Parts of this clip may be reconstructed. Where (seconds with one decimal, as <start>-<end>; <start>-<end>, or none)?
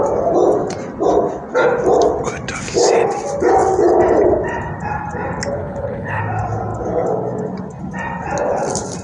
5.6-6.2